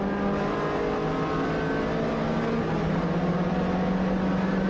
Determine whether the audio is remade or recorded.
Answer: recorded